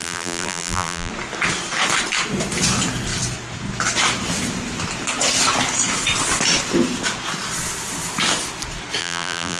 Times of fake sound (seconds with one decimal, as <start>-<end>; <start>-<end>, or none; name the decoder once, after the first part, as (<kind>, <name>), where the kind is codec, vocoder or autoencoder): 0.0-1.1 (vocoder, BigVGAN v2); 9.0-9.6